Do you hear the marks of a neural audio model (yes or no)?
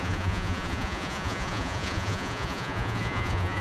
yes